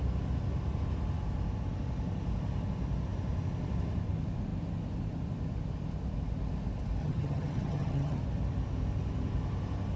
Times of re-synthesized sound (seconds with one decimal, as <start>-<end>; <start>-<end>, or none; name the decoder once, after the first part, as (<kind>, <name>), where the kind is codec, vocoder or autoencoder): 7.0-8.2 (vocoder, HiFi-GAN)